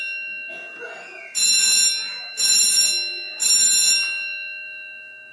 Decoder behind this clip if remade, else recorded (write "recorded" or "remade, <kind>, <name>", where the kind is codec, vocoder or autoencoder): recorded